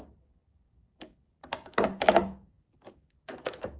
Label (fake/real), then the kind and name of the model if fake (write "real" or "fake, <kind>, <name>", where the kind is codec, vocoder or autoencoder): fake, codec, DAC